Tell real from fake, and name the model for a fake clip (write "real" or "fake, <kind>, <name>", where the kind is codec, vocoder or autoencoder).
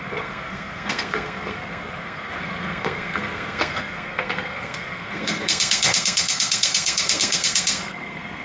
fake, codec, SNAC